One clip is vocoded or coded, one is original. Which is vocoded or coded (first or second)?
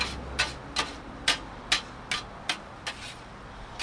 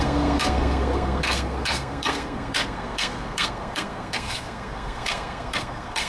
second